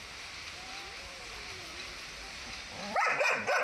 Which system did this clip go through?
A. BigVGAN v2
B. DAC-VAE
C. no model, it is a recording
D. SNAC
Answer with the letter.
A